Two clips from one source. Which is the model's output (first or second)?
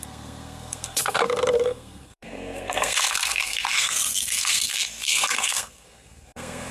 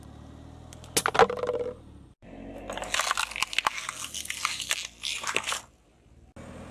first